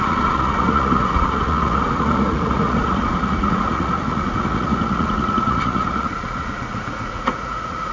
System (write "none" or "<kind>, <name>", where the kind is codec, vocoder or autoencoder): vocoder, Vocos